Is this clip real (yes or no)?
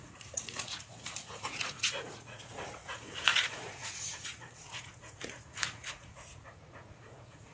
no